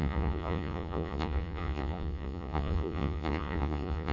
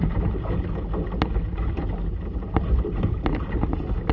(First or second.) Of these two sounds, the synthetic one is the first